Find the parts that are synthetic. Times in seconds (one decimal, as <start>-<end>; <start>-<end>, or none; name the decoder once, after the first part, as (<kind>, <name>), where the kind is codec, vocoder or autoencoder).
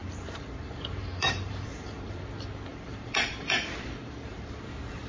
0.0-2.2 (vocoder, BigVGAN v2); 2.7-4.6